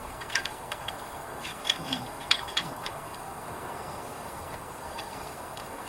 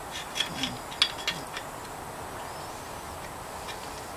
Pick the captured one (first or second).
second